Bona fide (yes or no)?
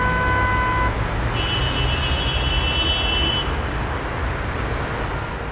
yes